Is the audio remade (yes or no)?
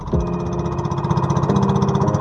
no